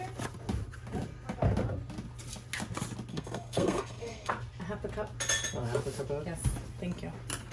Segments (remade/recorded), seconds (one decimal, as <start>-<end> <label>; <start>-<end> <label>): 0.0-3.1 recorded; 3.1-4.3 remade; 4.3-7.5 recorded